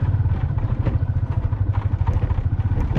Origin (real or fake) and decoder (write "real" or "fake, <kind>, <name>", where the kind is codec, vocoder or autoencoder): fake, vocoder, BigVGAN v2